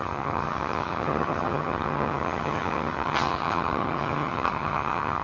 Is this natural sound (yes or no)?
no